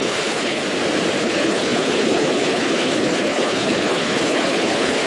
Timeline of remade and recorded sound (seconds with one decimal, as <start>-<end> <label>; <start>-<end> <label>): 0.0-0.6 remade; 0.6-1.2 recorded; 1.2-5.1 remade